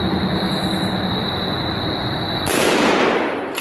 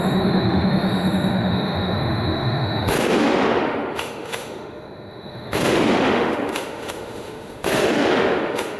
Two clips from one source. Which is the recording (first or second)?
first